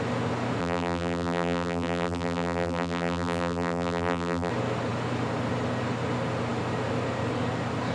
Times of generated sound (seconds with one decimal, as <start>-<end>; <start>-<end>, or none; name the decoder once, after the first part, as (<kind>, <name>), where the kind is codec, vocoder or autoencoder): 0.6-4.5 (vocoder, BigVGAN v2)